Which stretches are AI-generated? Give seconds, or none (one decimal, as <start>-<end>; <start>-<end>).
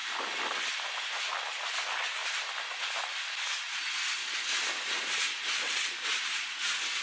none